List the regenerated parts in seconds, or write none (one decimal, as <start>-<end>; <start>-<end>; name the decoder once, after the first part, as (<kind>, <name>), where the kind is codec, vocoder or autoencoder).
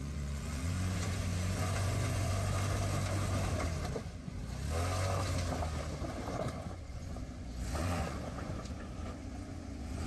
0.0-2.3 (vocoder, Vocos); 4.0-4.4; 6.5-10.1